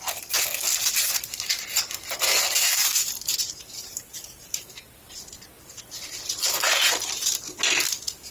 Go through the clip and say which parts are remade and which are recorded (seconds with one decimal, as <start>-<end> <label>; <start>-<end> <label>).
0.0-2.8 recorded; 2.8-5.2 remade; 5.2-8.3 recorded